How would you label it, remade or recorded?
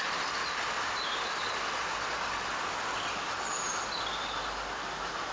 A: recorded